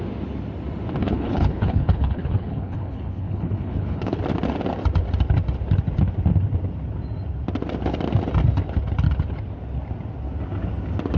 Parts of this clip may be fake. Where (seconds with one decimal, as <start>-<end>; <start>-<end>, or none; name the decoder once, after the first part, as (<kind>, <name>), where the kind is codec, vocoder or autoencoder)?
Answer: 1.0-4.2 (codec, HILCodec)